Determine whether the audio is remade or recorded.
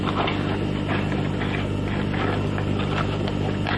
recorded